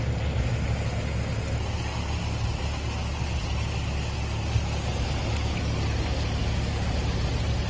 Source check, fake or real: real